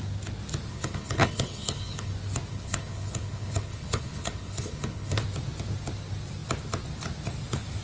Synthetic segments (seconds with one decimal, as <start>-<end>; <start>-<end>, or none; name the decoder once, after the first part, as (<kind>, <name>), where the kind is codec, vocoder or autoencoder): 0.7-2.1 (codec, HILCodec); 2.5-5.2

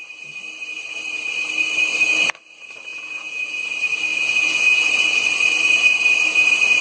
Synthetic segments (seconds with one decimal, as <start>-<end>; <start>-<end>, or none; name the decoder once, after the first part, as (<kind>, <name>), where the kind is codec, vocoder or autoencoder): 2.9-3.6 (vocoder, Vocos); 4.1-4.9